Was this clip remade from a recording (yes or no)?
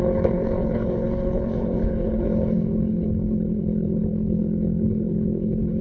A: yes